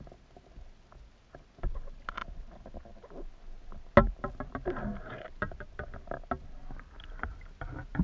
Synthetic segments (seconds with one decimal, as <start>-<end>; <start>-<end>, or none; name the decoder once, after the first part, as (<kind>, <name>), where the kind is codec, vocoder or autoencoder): none